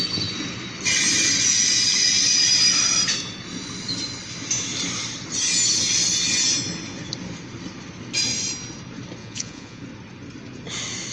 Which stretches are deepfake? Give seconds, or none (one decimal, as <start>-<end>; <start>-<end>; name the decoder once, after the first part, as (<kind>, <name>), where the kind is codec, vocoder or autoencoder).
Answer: 9.2-9.8 (vocoder, Vocos)